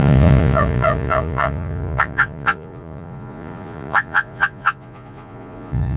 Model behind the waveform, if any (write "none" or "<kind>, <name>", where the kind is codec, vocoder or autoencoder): vocoder, Vocos